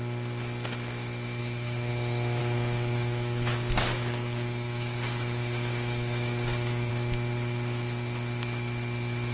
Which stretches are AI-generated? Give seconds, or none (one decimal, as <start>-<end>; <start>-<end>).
1.4-1.9; 2.4-6.9